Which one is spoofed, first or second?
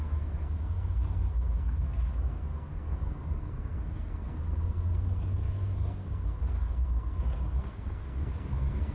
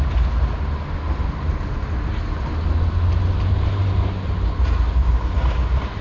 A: first